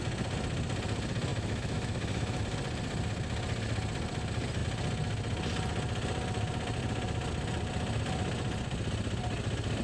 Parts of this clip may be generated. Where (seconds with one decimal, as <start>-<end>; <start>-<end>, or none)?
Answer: 1.3-2.4